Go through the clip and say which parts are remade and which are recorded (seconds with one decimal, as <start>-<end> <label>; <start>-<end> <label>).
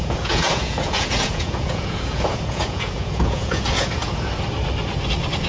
0.0-4.3 remade; 4.3-5.5 recorded